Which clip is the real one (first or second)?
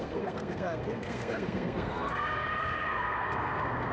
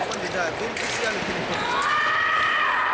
second